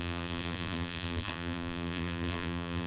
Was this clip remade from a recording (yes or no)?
yes